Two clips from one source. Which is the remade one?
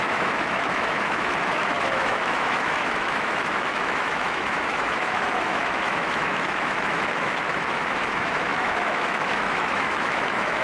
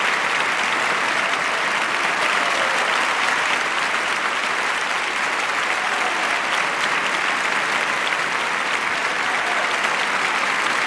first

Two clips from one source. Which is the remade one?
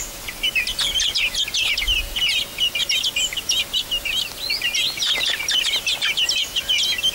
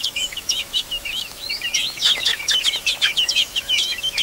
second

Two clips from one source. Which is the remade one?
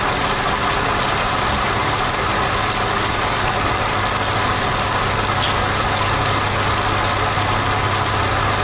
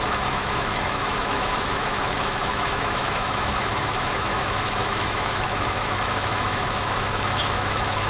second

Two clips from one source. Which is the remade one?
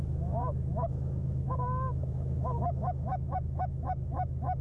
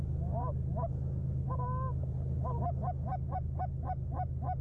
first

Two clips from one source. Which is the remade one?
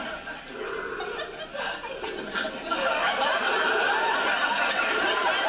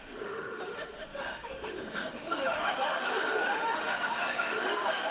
second